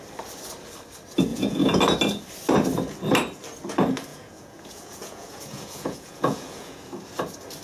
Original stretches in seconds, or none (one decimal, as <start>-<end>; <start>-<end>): 0.0-1.3; 1.8-4.1; 6.9-7.6